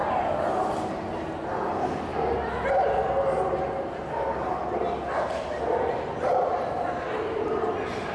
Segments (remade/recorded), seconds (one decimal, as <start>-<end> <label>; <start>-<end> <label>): 0.0-8.1 recorded